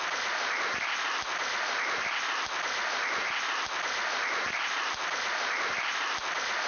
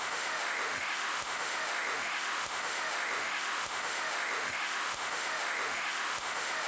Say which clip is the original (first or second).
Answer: first